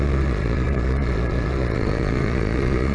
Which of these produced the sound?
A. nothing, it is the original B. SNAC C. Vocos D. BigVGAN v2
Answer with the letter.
C